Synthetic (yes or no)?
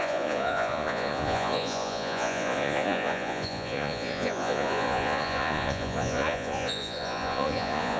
yes